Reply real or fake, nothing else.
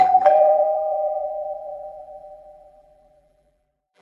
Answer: fake